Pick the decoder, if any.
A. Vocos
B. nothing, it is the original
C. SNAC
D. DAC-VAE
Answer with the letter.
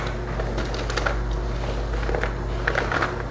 B